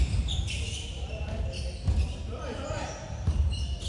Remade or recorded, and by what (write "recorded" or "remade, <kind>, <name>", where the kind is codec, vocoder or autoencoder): recorded